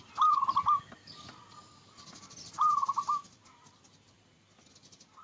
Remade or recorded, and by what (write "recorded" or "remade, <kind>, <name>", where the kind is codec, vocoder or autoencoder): recorded